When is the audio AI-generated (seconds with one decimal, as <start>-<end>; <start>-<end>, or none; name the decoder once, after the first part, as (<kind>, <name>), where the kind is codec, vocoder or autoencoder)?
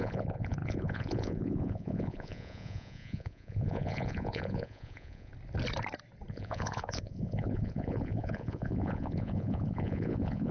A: 0.0-5.3 (vocoder, Vocos); 6.3-10.5